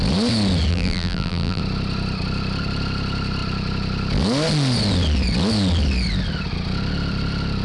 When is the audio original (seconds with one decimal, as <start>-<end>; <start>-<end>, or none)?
0.0-0.7; 1.6-7.6